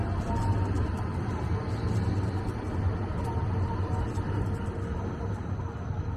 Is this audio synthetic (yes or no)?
no